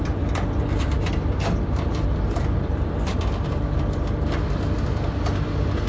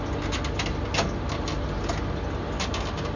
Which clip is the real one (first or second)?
second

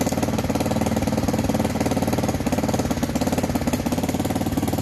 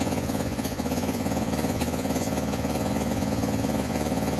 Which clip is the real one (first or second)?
first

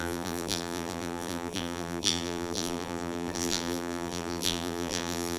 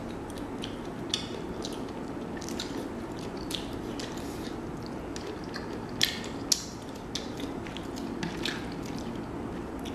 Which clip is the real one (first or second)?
second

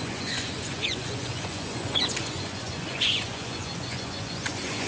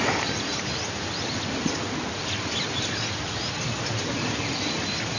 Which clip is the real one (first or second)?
second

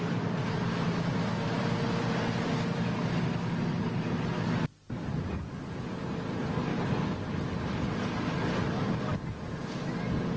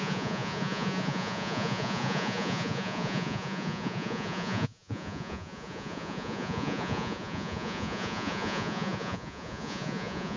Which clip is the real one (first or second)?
first